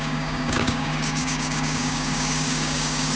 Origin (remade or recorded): remade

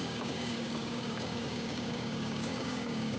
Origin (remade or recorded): remade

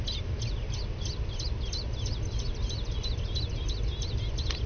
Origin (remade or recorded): recorded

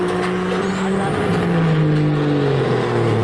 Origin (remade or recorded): recorded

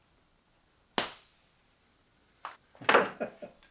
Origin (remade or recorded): recorded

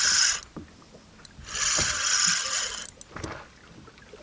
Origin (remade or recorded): recorded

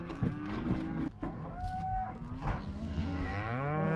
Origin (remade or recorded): remade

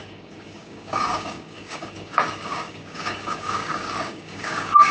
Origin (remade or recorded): remade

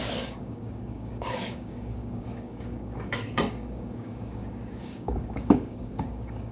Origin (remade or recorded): remade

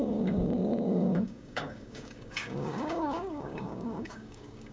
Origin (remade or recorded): remade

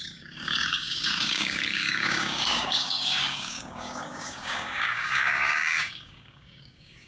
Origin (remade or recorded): remade